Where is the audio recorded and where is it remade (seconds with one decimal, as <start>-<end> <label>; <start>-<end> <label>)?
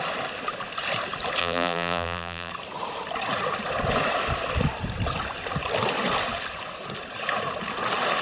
0.0-1.4 recorded; 1.4-2.5 remade; 2.5-8.2 recorded